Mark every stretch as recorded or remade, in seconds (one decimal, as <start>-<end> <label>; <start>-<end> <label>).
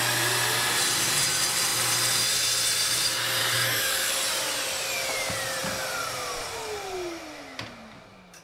0.0-3.4 recorded; 3.4-4.1 remade; 4.1-8.4 recorded